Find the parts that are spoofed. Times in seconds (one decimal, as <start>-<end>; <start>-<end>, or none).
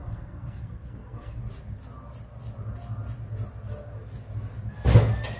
0.0-1.4